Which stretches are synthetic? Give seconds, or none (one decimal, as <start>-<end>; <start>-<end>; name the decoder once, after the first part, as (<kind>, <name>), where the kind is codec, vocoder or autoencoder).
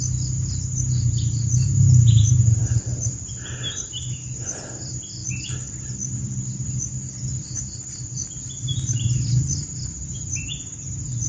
5.2-6.7 (vocoder, BigVGAN v2)